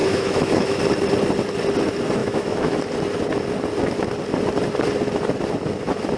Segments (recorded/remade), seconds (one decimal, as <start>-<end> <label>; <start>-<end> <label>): 0.0-0.8 remade; 0.8-2.2 recorded; 2.2-2.8 remade; 2.8-6.2 recorded